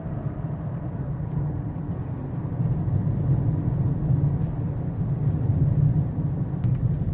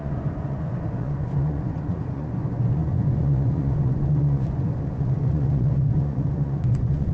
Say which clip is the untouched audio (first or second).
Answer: first